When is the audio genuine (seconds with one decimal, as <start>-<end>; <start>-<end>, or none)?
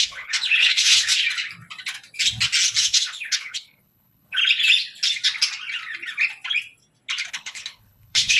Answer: 1.1-2.8; 4.4-7.3